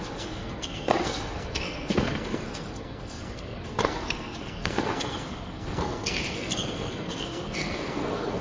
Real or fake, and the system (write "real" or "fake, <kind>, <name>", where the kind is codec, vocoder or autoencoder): fake, codec, SNAC